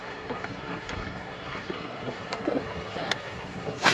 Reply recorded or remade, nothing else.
remade